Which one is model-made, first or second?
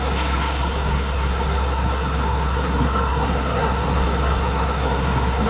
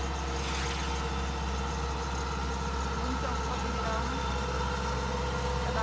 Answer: first